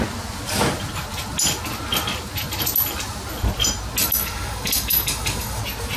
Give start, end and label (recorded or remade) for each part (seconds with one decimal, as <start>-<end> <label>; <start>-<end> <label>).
0.0-4.0 recorded; 4.0-5.6 remade; 5.6-6.0 recorded